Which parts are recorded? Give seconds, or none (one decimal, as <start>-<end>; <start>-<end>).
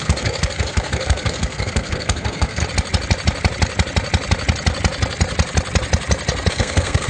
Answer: 2.6-6.5